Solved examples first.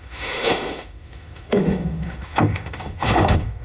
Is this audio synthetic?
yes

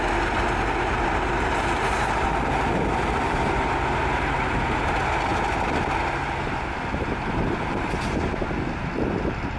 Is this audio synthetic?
no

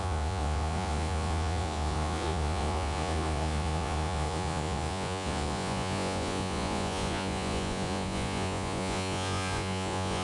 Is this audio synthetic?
yes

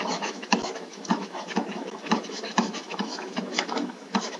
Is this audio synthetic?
yes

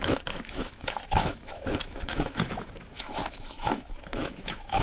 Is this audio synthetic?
yes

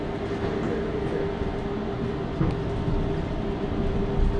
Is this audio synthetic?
no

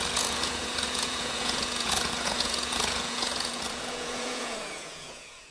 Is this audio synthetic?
yes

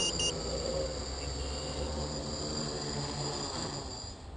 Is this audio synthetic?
no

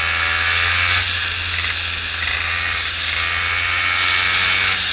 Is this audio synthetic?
no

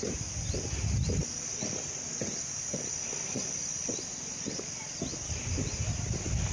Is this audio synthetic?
no